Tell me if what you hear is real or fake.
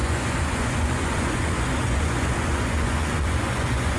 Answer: fake